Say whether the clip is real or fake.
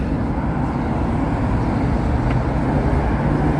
real